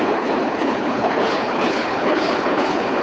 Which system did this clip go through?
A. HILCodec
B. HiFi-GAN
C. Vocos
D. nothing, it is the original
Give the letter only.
A